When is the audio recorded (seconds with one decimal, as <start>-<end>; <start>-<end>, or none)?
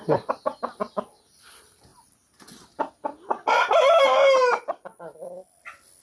0.0-6.0